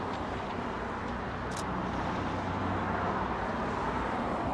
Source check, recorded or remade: recorded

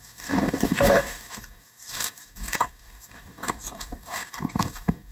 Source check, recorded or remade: remade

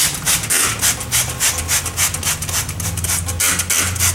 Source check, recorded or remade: recorded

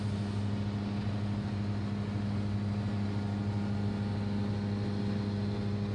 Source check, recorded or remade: recorded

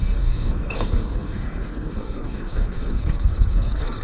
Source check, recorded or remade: remade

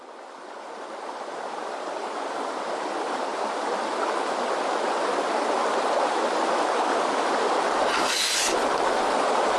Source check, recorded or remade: recorded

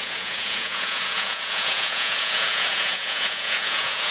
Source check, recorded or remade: remade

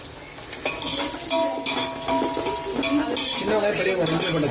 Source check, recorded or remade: recorded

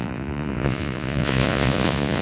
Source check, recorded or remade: remade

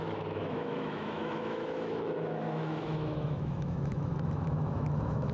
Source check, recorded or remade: remade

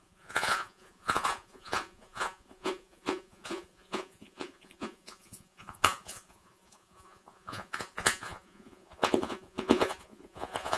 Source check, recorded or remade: remade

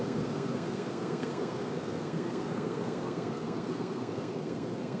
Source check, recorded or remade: remade